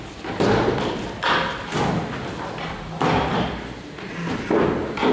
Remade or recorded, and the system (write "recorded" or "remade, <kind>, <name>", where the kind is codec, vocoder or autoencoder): recorded